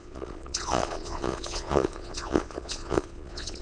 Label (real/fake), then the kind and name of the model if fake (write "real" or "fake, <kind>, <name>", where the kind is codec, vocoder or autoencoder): fake, vocoder, Vocos